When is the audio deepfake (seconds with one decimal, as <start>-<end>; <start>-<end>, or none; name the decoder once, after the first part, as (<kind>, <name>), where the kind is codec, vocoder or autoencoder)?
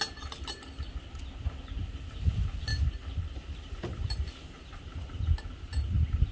2.7-5.6 (vocoder, BigVGAN v2)